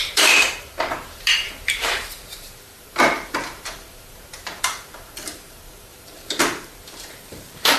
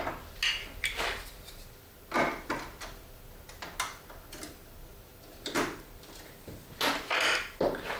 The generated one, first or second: first